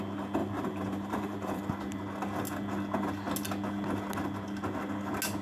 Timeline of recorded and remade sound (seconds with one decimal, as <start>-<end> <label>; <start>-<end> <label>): 0.0-0.4 recorded; 0.4-1.6 remade; 1.6-5.4 recorded